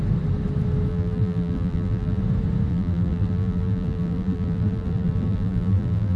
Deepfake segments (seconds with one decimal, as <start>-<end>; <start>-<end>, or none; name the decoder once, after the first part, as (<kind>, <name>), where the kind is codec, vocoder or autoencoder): 0.9-2.2 (vocoder, BigVGAN v2); 2.7-6.2